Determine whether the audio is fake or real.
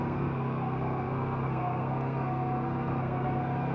fake